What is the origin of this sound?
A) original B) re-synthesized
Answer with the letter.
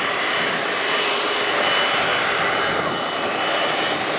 A